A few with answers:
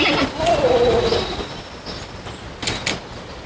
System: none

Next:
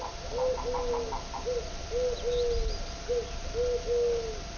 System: none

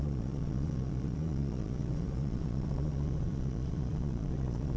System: vocoder, Vocos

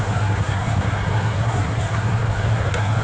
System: codec, SNAC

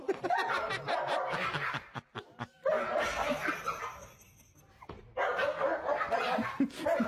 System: none